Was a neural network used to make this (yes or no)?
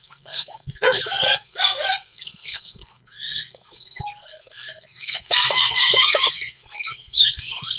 yes